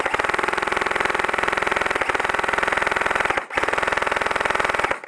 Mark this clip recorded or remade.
recorded